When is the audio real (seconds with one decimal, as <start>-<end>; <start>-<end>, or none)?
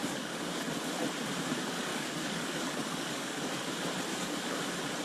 0.6-1.9; 3.6-4.1; 4.6-5.0